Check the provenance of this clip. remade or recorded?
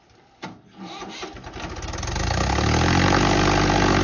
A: recorded